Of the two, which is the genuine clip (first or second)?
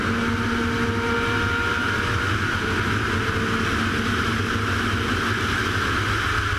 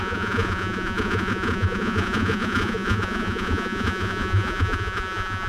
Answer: first